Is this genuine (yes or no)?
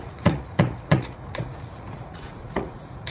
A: no